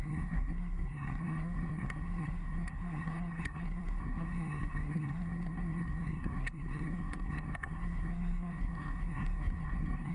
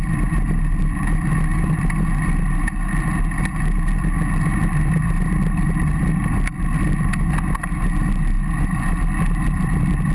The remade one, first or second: first